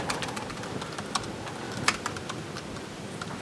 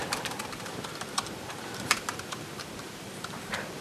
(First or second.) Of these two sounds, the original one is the first